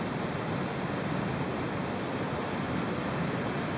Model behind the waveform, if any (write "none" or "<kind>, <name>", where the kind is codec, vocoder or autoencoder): none